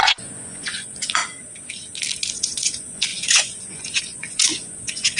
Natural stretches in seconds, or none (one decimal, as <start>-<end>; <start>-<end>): 1.2-2.3